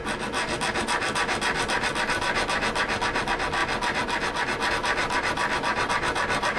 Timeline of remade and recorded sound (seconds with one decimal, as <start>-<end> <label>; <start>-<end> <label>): 0.0-3.6 remade; 3.6-4.7 recorded; 4.7-6.6 remade